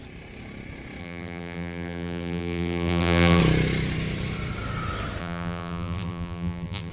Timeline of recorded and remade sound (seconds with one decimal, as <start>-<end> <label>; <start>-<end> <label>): 0.0-1.0 recorded; 1.0-3.4 remade; 3.4-5.2 recorded; 5.2-6.9 remade